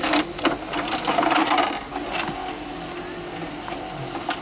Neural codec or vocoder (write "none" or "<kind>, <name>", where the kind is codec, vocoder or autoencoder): none